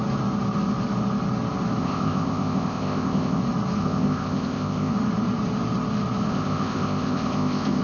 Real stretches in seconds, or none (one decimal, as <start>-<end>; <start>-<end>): 0.0-1.8; 3.4-3.8; 4.9-6.3